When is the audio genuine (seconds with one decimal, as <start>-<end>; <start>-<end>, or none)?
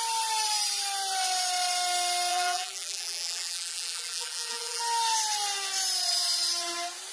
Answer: 0.0-2.3; 4.8-7.1